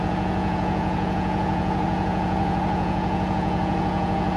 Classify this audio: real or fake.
fake